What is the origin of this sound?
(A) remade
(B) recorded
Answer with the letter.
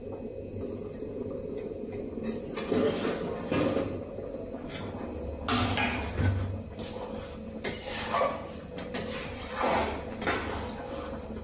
B